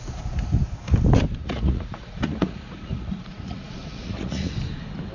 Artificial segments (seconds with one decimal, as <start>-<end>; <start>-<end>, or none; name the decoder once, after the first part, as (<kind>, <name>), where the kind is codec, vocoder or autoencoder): 1.4-4.5 (vocoder, Vocos)